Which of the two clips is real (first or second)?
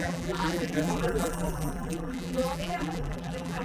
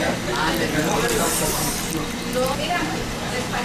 second